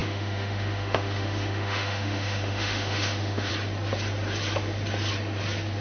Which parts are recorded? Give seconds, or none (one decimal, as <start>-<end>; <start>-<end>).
3.5-5.8